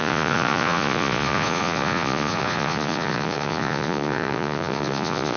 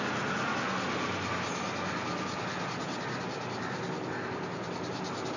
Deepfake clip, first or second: first